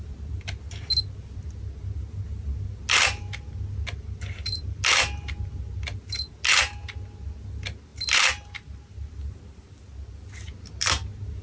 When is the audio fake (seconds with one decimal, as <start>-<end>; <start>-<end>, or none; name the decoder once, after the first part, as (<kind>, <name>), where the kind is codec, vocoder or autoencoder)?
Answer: none

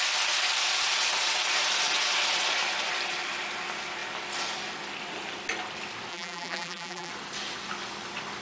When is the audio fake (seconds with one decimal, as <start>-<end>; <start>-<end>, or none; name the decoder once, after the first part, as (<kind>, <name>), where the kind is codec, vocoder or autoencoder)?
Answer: 6.1-7.1 (vocoder, BigVGAN v2)

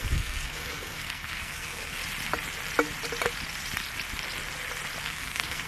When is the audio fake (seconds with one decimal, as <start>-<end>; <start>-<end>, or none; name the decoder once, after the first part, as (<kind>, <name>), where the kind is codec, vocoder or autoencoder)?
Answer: 0.0-2.0 (codec, SNAC); 5.0-5.7